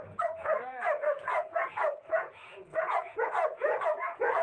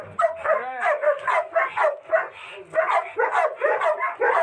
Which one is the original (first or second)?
second